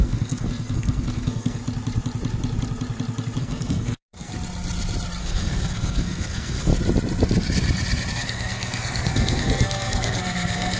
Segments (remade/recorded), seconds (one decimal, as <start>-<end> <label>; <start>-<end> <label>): 0.0-1.6 remade; 1.6-3.4 recorded; 3.4-4.3 remade; 4.3-5.2 recorded; 5.2-6.7 remade; 6.7-8.1 recorded; 8.1-10.8 remade